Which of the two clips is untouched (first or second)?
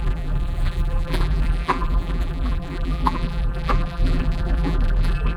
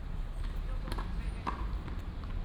second